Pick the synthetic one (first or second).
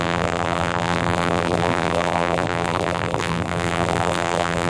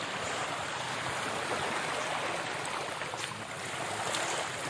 first